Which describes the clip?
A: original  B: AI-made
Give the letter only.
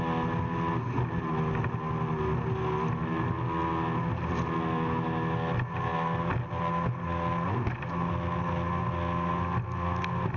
A